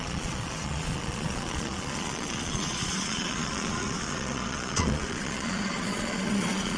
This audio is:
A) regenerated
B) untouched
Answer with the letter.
A